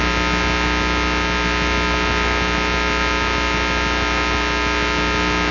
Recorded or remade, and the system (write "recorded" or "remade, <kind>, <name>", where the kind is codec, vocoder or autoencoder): recorded